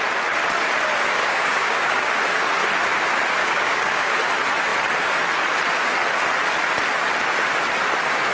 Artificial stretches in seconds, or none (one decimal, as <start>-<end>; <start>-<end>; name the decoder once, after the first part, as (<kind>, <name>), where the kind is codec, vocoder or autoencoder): 1.2-2.1 (codec, DAC); 3.4-4.1